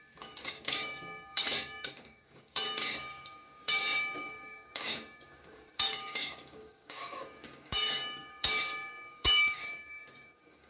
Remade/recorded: remade